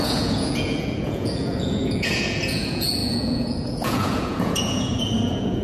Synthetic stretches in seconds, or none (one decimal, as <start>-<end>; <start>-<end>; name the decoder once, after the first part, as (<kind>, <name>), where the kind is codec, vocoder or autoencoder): 0.0-5.6 (vocoder, Vocos)